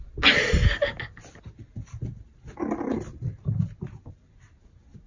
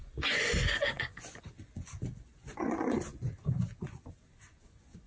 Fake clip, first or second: second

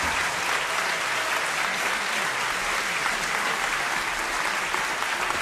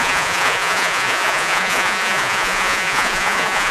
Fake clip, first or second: second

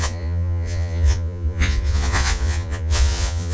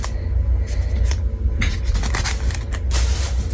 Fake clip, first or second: first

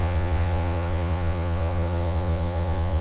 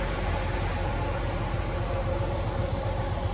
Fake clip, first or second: first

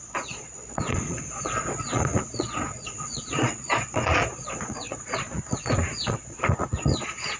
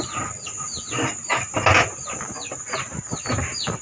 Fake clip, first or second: first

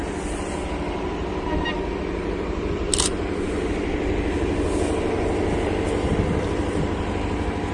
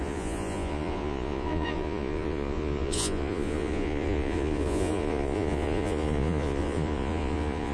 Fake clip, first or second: second